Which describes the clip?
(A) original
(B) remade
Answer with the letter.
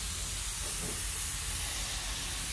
A